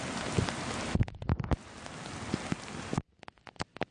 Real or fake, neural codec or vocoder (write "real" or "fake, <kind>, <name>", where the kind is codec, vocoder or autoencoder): real